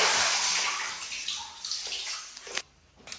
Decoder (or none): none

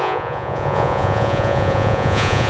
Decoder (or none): vocoder, Vocos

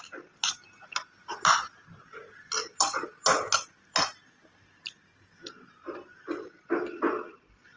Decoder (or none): none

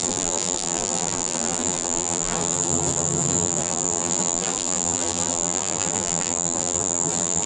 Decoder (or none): vocoder, BigVGAN v2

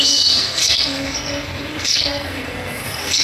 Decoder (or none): codec, SNAC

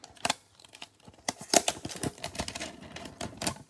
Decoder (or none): none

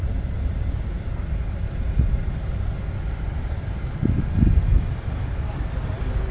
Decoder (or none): none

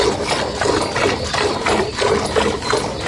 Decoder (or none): none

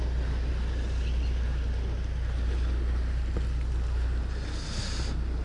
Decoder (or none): none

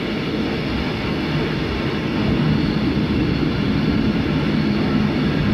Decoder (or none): none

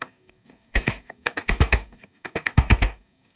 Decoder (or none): codec, DAC